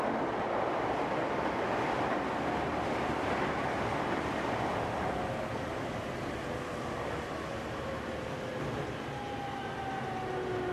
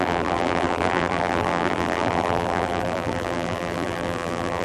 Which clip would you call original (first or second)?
first